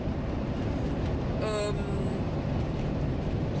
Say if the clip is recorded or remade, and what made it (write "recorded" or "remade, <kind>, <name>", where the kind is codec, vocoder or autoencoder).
recorded